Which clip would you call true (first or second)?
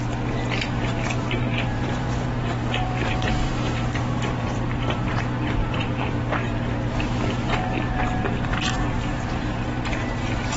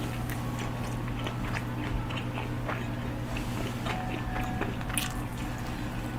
second